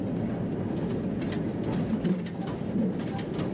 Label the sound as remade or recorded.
recorded